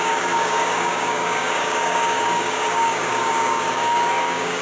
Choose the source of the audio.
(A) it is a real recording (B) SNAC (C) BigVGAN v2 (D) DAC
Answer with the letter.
D